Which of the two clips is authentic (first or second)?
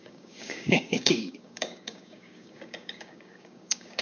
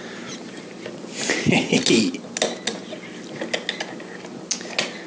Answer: second